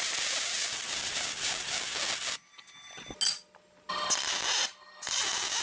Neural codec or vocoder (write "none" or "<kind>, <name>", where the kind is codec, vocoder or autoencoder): none